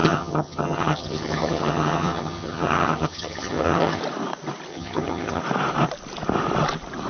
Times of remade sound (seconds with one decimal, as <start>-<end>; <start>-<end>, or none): 0.0-4.0; 4.7-5.4